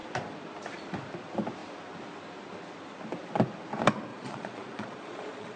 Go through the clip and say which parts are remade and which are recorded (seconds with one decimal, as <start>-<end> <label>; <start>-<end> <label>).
0.0-4.1 recorded; 4.1-5.6 remade